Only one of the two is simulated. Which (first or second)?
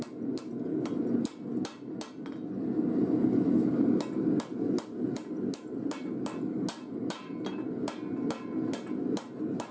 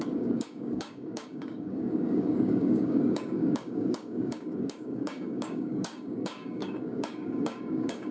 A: second